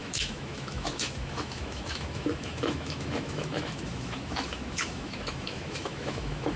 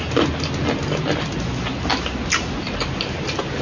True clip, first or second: second